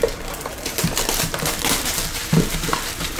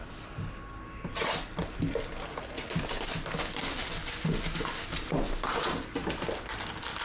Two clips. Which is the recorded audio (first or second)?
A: second